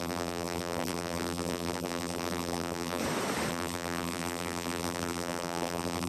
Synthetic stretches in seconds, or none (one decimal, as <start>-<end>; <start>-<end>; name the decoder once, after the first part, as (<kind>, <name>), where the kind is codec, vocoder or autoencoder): 0.0-3.0 (vocoder, BigVGAN v2); 3.5-6.1